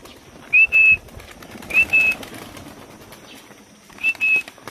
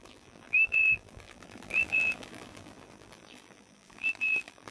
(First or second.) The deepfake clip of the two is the second